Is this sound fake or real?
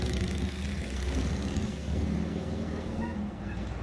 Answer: fake